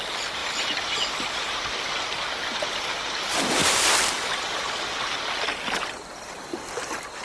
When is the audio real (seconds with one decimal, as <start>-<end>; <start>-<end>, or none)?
0.0-7.2